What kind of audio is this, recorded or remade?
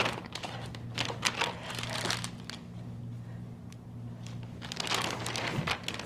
recorded